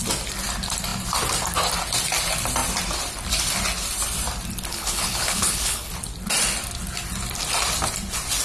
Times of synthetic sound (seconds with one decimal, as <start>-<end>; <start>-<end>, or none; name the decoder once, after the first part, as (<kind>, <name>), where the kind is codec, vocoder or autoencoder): 4.7-5.9 (codec, HILCodec)